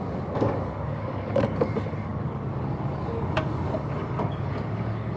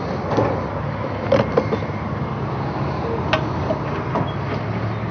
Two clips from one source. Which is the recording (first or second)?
second